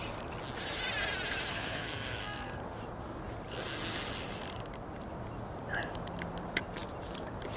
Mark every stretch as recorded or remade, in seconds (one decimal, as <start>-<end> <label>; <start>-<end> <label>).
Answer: 0.0-1.5 recorded; 1.5-2.6 remade; 2.6-7.6 recorded